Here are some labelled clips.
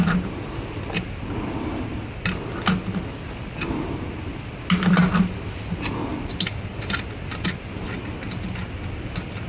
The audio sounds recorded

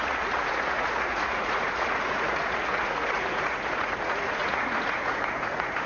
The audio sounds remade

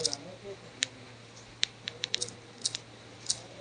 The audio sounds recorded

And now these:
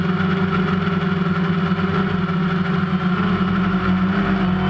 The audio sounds recorded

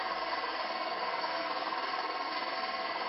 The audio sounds remade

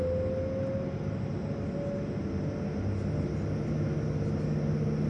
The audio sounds recorded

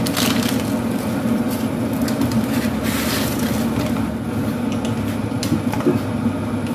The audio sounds recorded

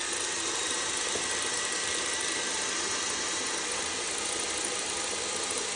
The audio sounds remade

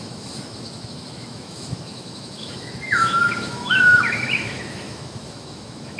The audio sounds remade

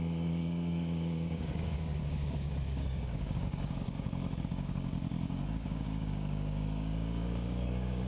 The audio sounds remade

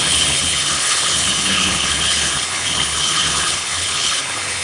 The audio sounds remade